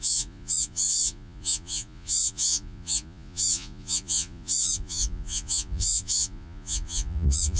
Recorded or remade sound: remade